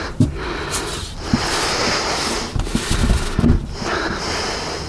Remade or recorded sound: recorded